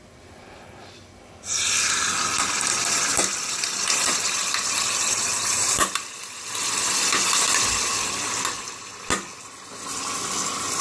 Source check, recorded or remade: recorded